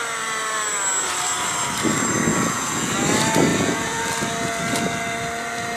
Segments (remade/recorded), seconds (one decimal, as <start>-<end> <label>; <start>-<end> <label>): 0.0-2.3 recorded; 2.3-2.9 remade; 2.9-3.5 recorded; 3.5-4.0 remade; 4.0-5.8 recorded